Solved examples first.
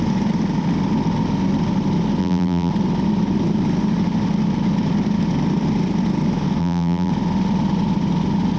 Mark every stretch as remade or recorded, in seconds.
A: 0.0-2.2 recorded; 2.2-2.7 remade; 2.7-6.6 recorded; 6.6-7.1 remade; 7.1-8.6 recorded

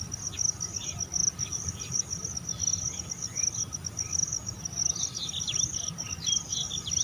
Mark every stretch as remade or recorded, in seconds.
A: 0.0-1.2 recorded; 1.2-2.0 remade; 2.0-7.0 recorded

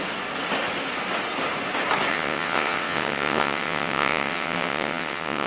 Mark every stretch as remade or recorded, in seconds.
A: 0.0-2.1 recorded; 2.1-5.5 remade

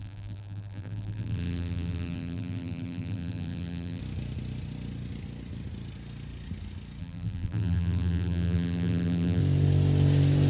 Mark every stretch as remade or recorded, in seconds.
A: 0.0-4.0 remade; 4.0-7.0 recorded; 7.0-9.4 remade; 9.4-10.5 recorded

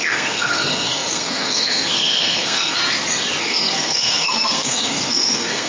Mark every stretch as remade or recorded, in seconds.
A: 0.0-2.8 remade; 2.8-3.4 recorded; 3.4-5.7 remade